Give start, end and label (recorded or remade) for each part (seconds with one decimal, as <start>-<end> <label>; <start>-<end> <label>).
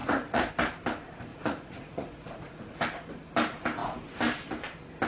0.0-0.5 remade; 0.5-1.3 recorded; 1.3-2.8 remade; 2.8-5.1 recorded